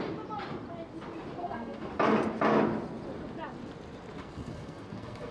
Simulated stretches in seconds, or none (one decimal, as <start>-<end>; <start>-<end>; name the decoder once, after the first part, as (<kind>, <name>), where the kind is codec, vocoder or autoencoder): 1.4-1.9 (codec, SNAC); 4.2-5.3